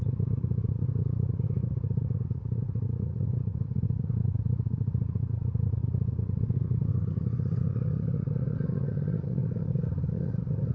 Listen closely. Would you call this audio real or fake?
fake